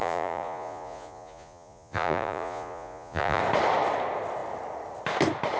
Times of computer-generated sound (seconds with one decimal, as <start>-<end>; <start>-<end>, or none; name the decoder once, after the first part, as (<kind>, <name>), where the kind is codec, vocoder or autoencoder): 0.0-3.4 (vocoder, Vocos)